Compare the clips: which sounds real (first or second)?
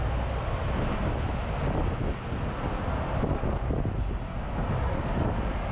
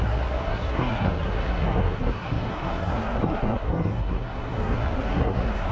first